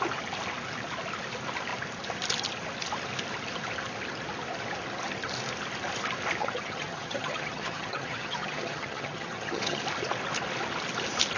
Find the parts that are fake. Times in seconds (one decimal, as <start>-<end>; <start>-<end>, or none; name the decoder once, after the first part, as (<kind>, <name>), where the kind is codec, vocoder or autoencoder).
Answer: 6.4-9.8 (vocoder, HiFi-GAN)